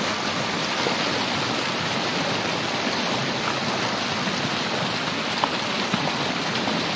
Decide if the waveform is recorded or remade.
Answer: recorded